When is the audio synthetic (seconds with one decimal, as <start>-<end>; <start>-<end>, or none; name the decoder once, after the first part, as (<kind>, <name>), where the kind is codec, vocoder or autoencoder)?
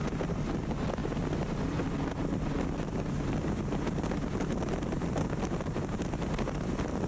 none